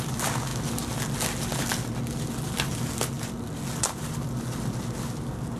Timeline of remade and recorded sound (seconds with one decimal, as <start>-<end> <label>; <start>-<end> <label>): 0.0-5.6 recorded